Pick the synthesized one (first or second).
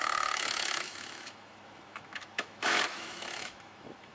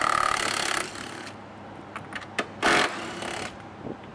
first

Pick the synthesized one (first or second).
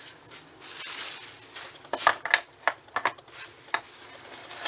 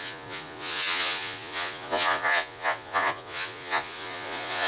second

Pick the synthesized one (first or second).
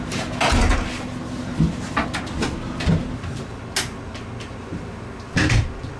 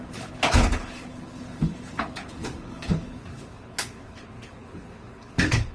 second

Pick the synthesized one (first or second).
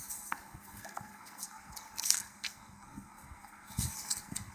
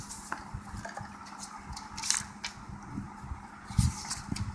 first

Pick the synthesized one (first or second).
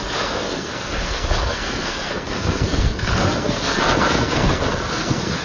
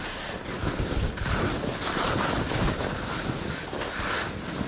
first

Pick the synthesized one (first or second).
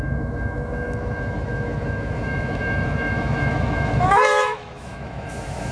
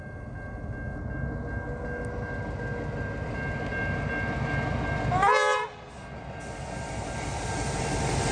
first